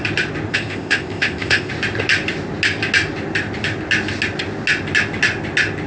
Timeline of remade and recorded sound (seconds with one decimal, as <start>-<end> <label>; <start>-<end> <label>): 0.0-0.5 recorded; 0.5-1.7 remade; 1.7-5.9 recorded